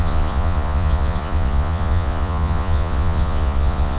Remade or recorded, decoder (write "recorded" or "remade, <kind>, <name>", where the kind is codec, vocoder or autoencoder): remade, vocoder, Vocos